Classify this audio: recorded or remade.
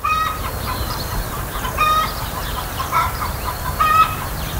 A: remade